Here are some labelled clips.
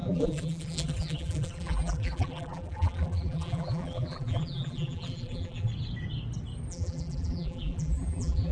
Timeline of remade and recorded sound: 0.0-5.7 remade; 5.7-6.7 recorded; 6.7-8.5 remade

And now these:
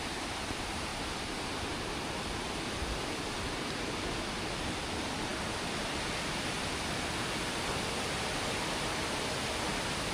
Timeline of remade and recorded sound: 0.0-10.1 recorded